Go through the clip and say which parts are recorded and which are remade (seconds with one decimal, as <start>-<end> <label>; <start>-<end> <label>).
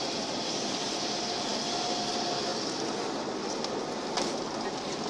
0.0-5.1 recorded